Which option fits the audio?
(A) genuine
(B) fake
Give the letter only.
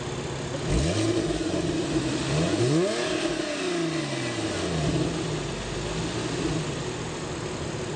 A